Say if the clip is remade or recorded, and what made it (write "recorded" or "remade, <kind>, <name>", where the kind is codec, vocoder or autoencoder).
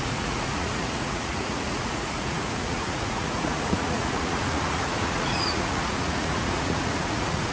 remade, vocoder, Vocos